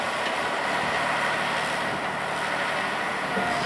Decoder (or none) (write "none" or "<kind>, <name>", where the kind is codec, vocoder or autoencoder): none